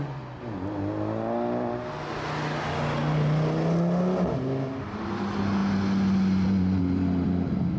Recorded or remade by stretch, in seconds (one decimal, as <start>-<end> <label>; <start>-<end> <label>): 0.0-7.8 recorded